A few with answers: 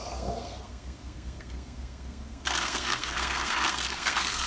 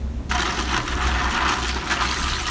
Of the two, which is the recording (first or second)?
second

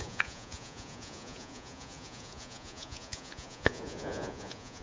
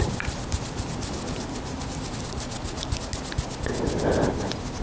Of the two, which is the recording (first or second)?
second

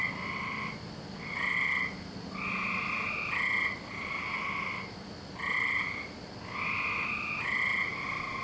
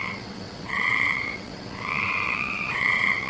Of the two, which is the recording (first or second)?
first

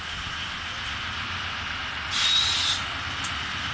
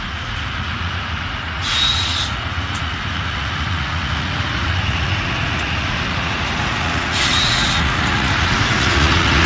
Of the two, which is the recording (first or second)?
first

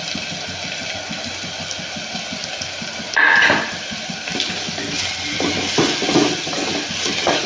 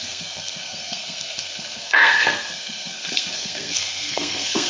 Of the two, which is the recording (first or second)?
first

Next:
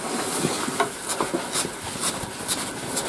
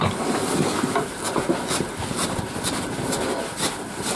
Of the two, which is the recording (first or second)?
first